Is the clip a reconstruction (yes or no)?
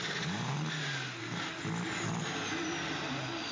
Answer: no